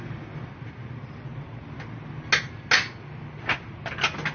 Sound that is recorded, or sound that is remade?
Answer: recorded